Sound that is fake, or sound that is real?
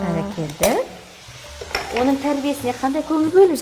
real